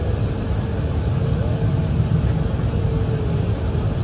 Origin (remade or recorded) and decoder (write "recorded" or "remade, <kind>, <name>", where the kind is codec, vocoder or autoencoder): recorded